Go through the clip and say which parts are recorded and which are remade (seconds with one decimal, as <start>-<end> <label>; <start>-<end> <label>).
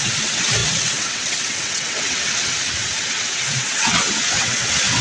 0.0-5.0 remade